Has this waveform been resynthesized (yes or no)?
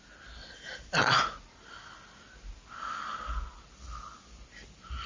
no